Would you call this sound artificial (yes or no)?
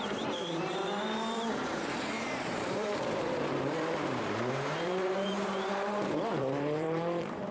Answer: yes